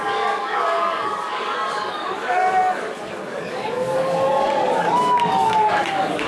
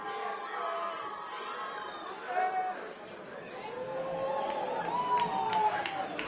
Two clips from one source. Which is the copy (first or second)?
first